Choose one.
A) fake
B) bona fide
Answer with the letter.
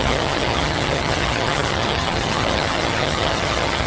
A